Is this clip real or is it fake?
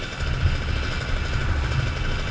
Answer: real